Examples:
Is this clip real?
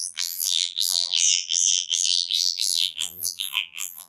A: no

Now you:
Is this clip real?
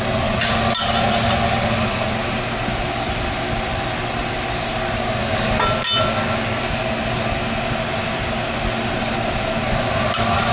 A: yes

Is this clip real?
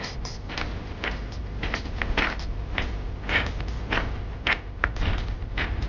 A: yes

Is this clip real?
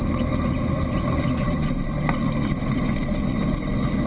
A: yes